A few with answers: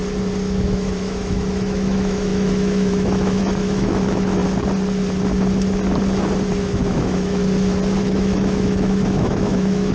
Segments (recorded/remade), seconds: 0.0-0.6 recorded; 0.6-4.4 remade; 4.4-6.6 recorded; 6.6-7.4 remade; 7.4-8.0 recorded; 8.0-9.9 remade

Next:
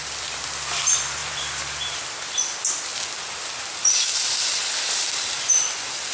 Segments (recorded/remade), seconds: 0.0-2.9 remade; 2.9-3.6 recorded; 3.6-6.1 remade

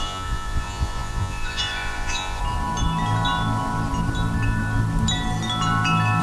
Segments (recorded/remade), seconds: 0.0-2.4 remade; 2.4-6.2 recorded

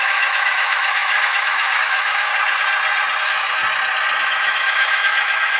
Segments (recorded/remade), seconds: 0.0-2.3 remade; 2.3-3.2 recorded; 3.2-3.6 remade; 3.6-4.2 recorded; 4.2-5.6 remade

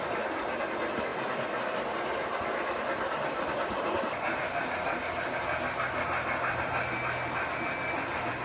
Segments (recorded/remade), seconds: 0.0-8.4 recorded